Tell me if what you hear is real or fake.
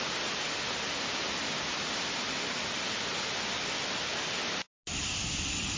real